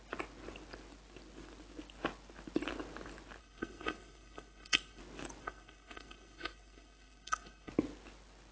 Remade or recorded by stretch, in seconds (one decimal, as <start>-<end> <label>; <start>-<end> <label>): 0.0-3.4 recorded; 3.4-5.0 remade; 5.0-5.4 recorded; 5.4-7.7 remade; 7.7-8.5 recorded